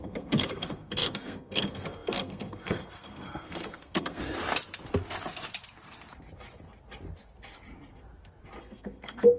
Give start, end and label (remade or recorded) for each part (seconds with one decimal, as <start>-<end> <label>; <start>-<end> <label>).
0.0-4.2 remade; 4.2-8.6 recorded; 8.6-9.4 remade